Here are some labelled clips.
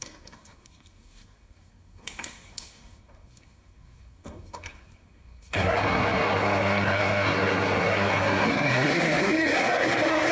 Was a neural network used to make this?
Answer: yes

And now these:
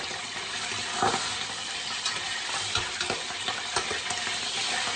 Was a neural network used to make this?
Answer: no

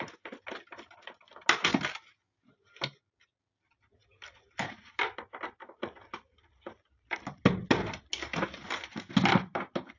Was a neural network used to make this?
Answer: no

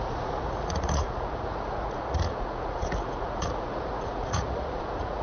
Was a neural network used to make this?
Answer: yes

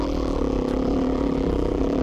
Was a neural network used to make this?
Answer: yes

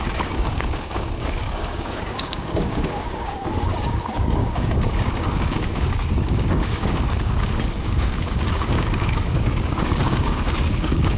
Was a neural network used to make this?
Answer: yes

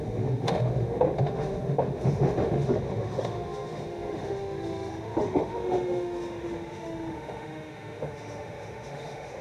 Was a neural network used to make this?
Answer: yes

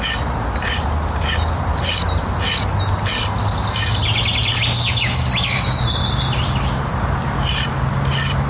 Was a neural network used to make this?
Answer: no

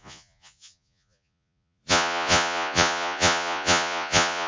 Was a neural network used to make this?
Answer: yes